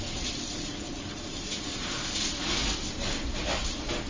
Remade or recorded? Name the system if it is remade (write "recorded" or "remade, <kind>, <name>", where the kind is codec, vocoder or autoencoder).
recorded